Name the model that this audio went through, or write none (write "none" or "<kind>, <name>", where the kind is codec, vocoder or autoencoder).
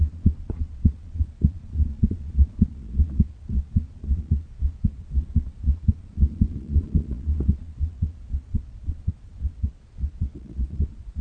vocoder, Vocos